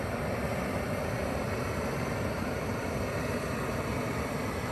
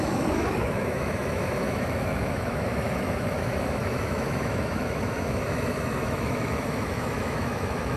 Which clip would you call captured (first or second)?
first